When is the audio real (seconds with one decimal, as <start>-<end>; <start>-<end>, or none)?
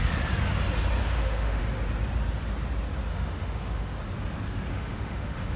0.0-1.0; 1.6-3.1; 3.9-4.7